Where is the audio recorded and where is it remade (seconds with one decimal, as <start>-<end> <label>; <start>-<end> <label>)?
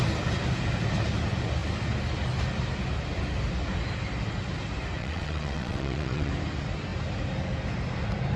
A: 0.0-5.0 recorded; 5.0-6.3 remade; 6.3-8.4 recorded